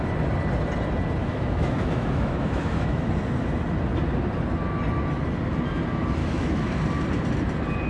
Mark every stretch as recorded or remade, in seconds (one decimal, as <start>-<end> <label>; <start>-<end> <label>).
0.0-1.2 recorded; 1.2-3.1 remade; 3.1-6.2 recorded; 6.2-6.8 remade; 6.8-7.9 recorded